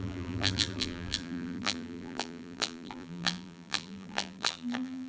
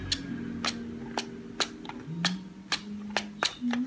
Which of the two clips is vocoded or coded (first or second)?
first